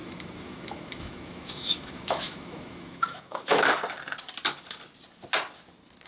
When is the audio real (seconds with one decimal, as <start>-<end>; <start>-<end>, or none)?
3.7-6.1